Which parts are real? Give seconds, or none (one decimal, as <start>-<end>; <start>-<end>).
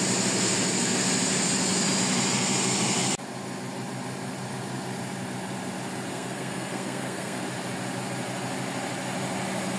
0.0-6.1; 7.4-9.8